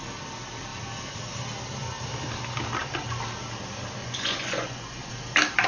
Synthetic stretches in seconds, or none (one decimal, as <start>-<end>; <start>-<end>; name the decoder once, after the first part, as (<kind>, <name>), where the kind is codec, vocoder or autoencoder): 4.0-5.1 (vocoder, Vocos)